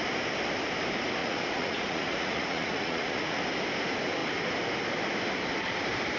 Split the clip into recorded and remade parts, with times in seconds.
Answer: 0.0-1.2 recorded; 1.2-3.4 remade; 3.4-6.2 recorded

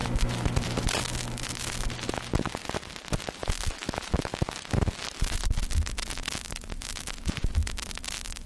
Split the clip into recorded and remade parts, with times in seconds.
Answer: 0.0-1.2 remade; 1.2-8.5 recorded

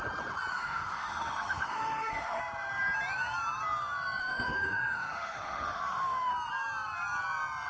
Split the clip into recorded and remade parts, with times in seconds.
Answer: 0.0-0.5 recorded; 0.5-2.4 remade; 2.4-4.2 recorded; 4.2-6.3 remade; 6.3-7.7 recorded

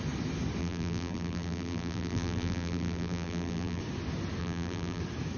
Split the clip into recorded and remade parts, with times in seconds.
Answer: 0.0-0.6 recorded; 0.6-3.8 remade; 3.8-4.4 recorded; 4.4-5.0 remade; 5.0-5.4 recorded

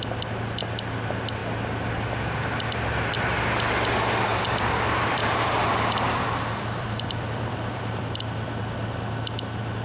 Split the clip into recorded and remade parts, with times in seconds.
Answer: 0.0-4.3 recorded; 4.3-8.6 remade; 8.6-9.8 recorded

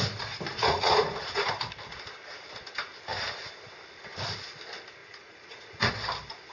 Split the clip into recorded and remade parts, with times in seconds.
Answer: 0.0-0.5 recorded; 0.5-1.5 remade; 1.5-5.0 recorded; 5.0-5.9 remade; 5.9-6.5 recorded

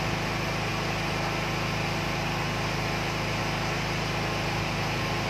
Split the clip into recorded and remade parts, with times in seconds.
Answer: 0.0-5.3 recorded

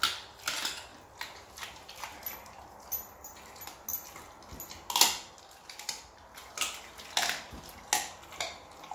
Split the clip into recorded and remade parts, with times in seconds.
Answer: 0.0-8.9 recorded